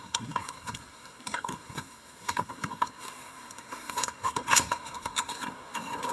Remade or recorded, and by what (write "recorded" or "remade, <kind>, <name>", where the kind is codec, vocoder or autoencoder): remade, codec, SNAC